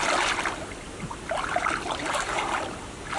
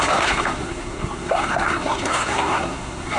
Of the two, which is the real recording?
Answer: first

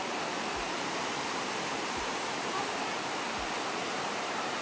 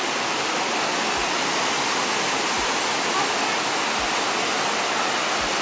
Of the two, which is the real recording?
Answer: second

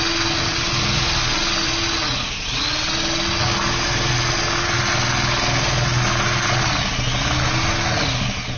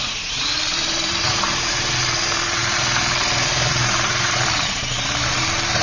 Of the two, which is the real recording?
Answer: first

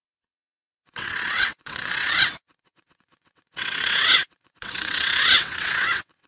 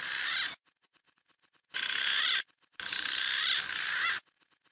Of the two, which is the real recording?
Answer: second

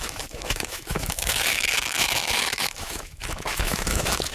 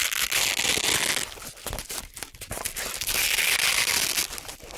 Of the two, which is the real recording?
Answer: second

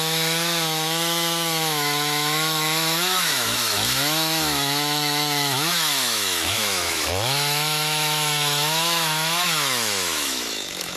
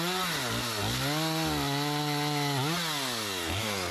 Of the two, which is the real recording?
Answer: second